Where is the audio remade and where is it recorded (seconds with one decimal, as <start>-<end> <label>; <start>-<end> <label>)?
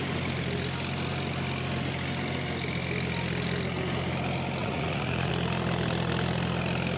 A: 0.0-4.6 recorded; 4.6-5.3 remade; 5.3-7.0 recorded